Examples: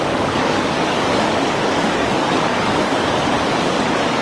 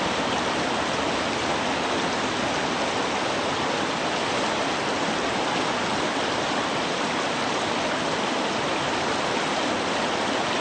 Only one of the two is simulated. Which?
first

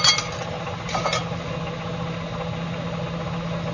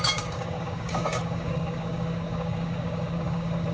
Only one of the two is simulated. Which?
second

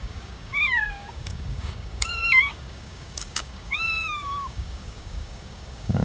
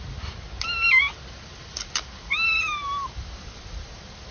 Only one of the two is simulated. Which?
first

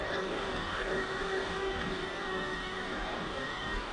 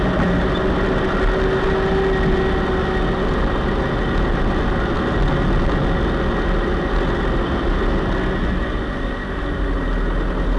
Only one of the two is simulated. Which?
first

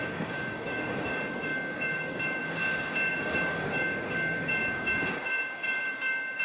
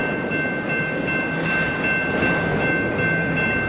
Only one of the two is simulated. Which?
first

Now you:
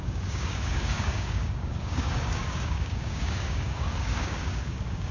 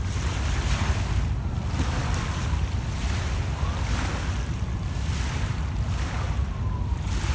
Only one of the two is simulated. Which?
first